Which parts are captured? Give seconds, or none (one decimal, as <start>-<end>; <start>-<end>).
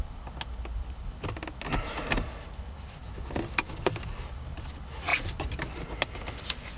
0.0-6.8